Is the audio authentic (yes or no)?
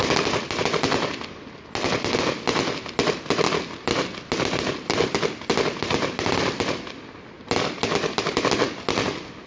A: yes